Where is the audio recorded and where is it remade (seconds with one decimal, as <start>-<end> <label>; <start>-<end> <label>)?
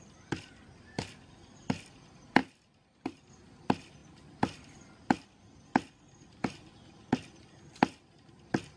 0.0-8.8 recorded